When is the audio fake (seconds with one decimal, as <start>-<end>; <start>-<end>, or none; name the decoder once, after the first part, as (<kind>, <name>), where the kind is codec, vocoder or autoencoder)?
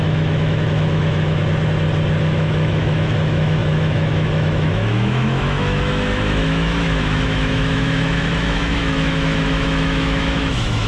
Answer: 0.0-1.4 (autoencoder, DAC-VAE); 2.2-10.9